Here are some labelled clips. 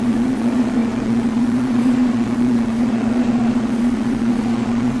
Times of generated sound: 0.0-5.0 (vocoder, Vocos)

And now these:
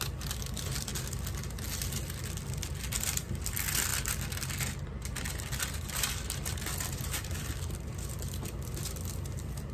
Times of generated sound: 0.0-0.9 (vocoder, BigVGAN v2); 2.4-9.7

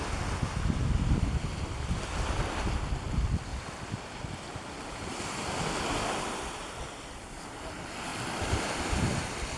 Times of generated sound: none

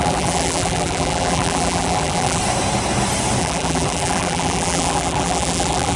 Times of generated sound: 0.0-2.4 (vocoder, BigVGAN v2); 3.4-6.0

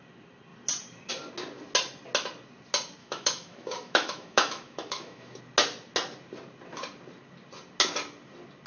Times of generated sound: 3.0-5.4 (autoencoder, DAC-VAE)